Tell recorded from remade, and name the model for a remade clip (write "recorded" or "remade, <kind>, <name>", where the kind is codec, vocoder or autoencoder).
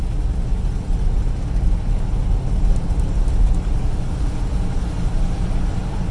recorded